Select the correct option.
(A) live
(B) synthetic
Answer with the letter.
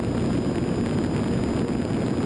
A